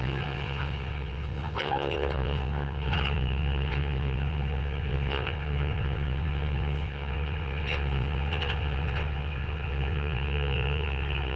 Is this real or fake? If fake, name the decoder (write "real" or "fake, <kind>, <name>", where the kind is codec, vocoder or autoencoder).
fake, vocoder, WaveNeXt